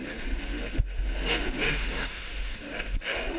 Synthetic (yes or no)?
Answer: yes